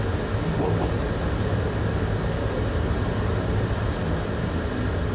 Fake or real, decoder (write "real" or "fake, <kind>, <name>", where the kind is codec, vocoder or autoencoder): real